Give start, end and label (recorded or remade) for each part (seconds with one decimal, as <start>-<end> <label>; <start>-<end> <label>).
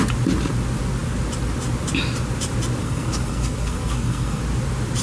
0.0-2.8 recorded; 2.8-4.4 remade; 4.4-5.0 recorded